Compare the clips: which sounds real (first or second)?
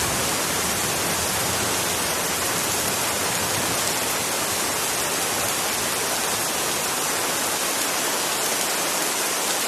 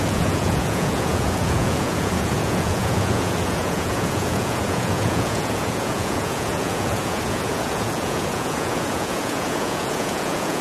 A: first